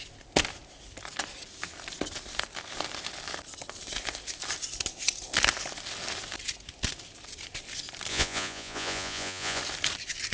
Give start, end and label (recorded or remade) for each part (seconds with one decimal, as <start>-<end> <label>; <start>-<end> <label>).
0.0-8.1 recorded; 8.1-9.6 remade; 9.6-10.3 recorded